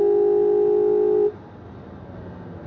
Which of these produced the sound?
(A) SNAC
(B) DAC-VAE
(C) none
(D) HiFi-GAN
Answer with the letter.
C